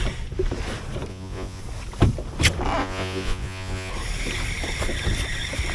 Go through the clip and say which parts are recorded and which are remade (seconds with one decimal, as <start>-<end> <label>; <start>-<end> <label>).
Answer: 0.0-1.1 recorded; 1.1-1.6 remade; 1.6-2.8 recorded; 2.8-3.9 remade; 3.9-5.7 recorded